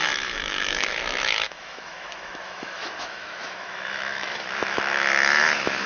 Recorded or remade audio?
remade